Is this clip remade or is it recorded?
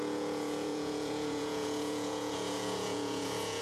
remade